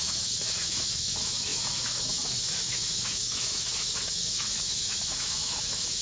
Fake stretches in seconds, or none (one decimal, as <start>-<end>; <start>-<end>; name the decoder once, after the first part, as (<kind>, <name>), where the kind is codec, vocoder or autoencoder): 0.0-6.0 (autoencoder, DAC-VAE)